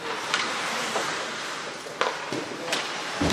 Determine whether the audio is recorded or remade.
remade